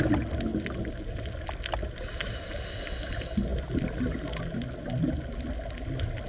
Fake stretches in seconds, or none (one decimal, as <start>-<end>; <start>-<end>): none